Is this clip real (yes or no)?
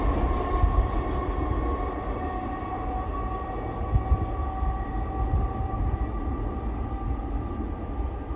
yes